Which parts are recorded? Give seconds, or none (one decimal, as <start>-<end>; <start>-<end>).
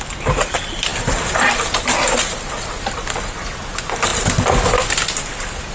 0.0-5.7